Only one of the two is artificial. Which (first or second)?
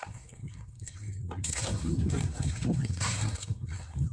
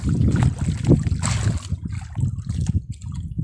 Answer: first